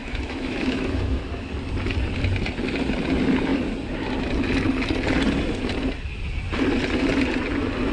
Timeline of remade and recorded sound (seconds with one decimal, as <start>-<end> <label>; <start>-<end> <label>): 0.0-1.5 remade; 1.5-7.9 recorded

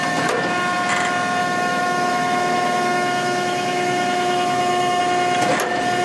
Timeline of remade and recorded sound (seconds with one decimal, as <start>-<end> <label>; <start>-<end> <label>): 0.0-1.4 recorded; 1.4-5.0 remade; 5.0-6.0 recorded

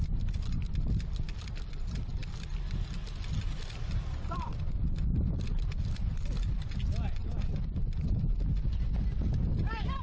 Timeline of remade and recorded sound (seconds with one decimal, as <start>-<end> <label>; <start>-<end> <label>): 0.0-10.0 recorded

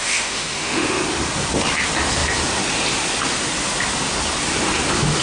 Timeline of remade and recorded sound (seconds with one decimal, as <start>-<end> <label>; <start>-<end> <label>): 0.0-1.0 remade; 1.0-5.2 recorded

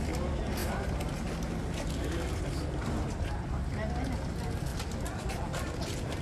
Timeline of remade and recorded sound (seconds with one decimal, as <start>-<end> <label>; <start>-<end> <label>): 0.0-6.2 recorded